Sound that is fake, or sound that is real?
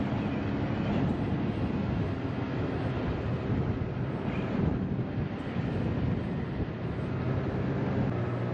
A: real